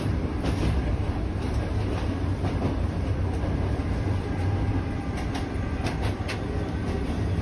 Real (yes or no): yes